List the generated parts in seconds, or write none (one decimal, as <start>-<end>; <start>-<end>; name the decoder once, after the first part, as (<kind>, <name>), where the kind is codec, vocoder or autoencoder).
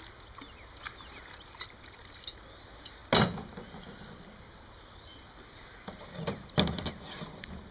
none